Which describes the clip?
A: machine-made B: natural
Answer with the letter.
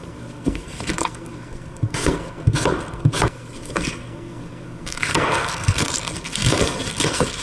A